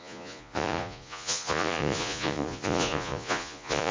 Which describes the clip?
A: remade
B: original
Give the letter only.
A